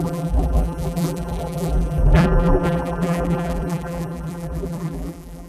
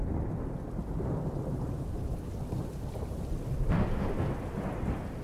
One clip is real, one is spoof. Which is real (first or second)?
second